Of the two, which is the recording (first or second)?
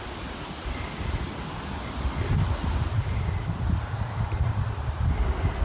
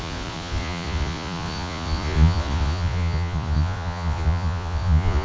first